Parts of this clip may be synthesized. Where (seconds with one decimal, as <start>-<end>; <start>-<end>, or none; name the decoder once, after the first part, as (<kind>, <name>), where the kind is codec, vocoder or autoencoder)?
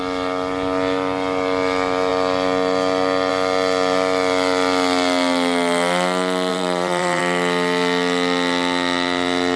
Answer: 6.5-7.2 (vocoder, BigVGAN v2)